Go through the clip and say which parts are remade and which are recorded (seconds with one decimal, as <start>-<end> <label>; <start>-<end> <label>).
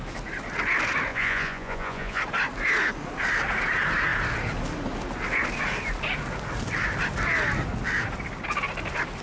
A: 0.0-1.1 recorded; 1.1-2.2 remade; 2.2-9.2 recorded